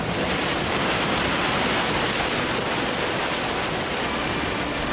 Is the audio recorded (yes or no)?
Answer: yes